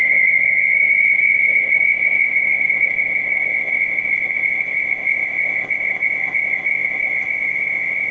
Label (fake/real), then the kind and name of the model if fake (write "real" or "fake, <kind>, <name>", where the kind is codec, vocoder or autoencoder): fake, codec, ZipCodec